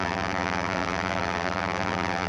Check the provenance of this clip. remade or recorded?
remade